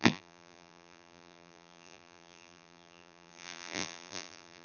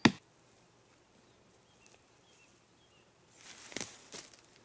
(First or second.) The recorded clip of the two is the second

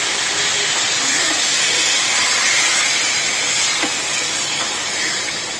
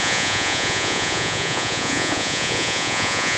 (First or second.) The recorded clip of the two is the first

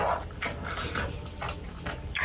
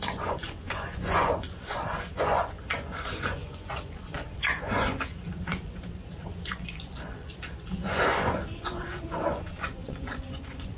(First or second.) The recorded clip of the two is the first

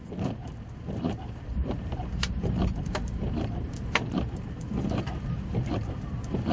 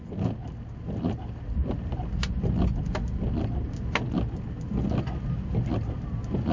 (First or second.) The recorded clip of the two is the second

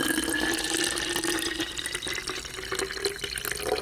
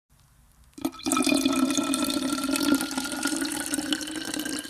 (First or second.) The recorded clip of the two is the first